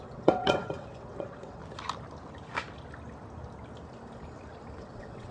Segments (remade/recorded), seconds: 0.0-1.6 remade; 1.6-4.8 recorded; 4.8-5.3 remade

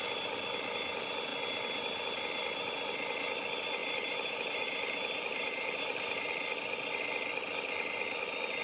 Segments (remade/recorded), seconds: 0.0-3.8 recorded; 3.8-6.3 remade; 6.3-8.6 recorded

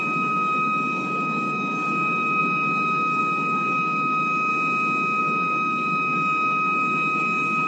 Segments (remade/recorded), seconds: 0.0-4.5 remade; 4.5-5.2 recorded; 5.2-7.7 remade

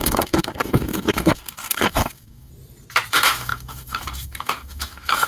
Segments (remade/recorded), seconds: 0.0-2.5 remade; 2.5-3.1 recorded; 3.1-5.3 remade

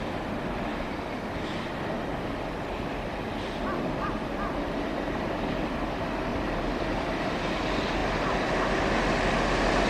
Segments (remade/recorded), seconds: 0.0-0.7 recorded; 0.7-5.6 remade; 5.6-6.3 recorded; 6.3-6.8 remade; 6.8-9.9 recorded

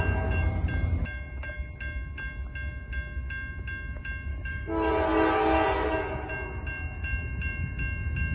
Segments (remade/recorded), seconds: 0.0-4.3 recorded; 4.3-4.9 remade; 4.9-8.3 recorded

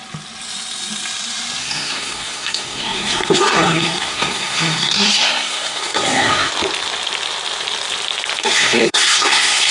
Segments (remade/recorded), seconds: 0.0-1.6 recorded; 1.6-6.5 remade; 6.5-8.4 recorded; 8.4-9.7 remade

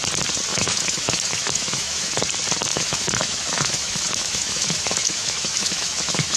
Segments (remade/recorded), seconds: 0.0-0.5 recorded; 0.5-2.2 remade; 2.2-2.7 recorded; 2.7-6.4 remade